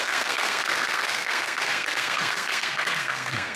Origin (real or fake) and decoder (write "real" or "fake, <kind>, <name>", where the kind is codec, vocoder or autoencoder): fake, codec, SNAC